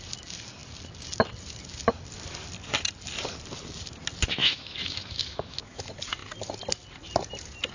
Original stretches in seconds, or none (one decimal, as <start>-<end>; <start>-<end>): 0.0-4.4; 5.8-7.7